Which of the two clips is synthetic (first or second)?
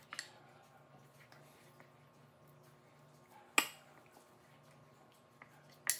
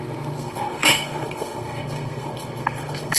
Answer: second